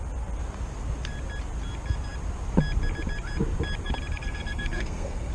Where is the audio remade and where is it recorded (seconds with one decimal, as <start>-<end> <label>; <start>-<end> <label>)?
0.0-4.2 recorded; 4.2-5.3 remade

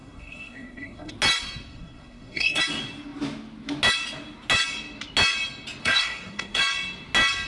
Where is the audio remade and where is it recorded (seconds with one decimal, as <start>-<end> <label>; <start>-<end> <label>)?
0.0-1.1 remade; 1.1-1.7 recorded; 1.7-2.6 remade; 2.6-5.8 recorded; 5.8-6.6 remade; 6.6-7.5 recorded

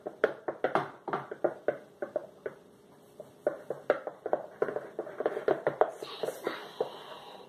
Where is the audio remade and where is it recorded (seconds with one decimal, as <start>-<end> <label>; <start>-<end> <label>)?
0.0-7.5 recorded

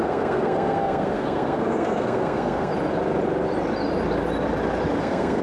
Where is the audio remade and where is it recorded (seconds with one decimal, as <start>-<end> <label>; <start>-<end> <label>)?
0.0-2.7 remade; 2.7-5.0 recorded; 5.0-5.4 remade

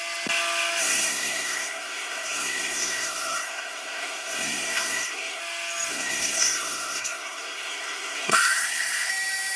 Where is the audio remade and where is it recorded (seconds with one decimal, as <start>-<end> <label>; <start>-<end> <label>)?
0.0-0.8 recorded; 0.8-5.4 remade; 5.4-5.9 recorded; 5.9-9.1 remade; 9.1-9.6 recorded

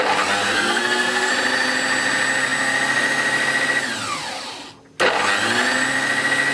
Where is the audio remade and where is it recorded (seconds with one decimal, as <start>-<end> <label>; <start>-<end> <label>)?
0.0-0.4 recorded; 0.4-1.3 remade; 1.3-6.5 recorded

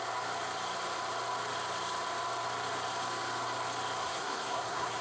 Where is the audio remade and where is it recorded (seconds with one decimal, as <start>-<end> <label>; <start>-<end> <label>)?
0.0-4.0 recorded; 4.0-5.0 remade